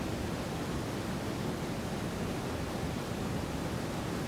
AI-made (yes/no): no